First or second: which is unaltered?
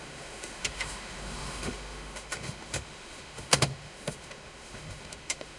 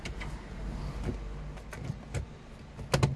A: second